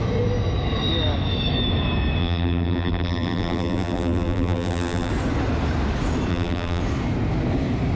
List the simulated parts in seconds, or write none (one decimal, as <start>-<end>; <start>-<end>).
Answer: 2.2-5.1; 6.3-6.8